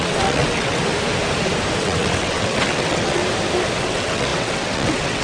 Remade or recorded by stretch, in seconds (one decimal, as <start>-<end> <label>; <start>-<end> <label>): 0.0-0.8 remade; 0.8-1.8 recorded; 1.8-3.2 remade; 3.2-3.8 recorded; 3.8-5.2 remade